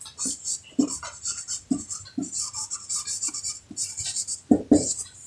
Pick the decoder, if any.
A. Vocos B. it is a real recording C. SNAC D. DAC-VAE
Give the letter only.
B